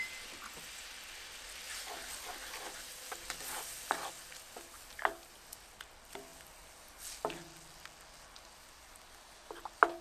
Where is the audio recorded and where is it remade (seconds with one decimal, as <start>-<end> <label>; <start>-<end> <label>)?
0.0-10.0 recorded